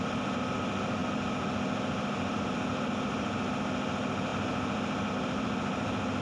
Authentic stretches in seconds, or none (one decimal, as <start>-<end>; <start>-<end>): 0.0-6.2